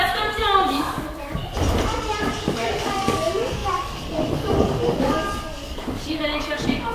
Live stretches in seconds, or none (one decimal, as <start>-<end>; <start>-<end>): 1.4-2.2